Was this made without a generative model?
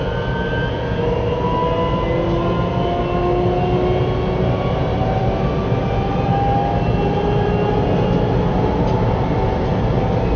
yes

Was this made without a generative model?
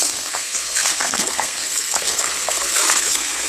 no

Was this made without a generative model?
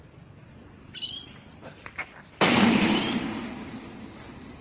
yes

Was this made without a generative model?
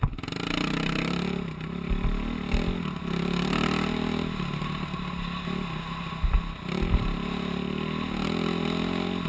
yes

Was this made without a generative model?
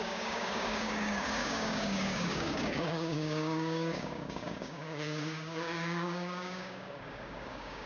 no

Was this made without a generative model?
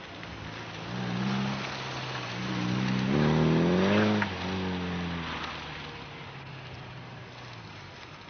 yes